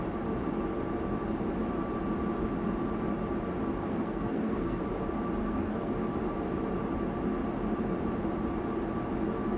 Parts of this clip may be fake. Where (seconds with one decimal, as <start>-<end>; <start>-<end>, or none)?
3.8-4.8; 5.4-5.9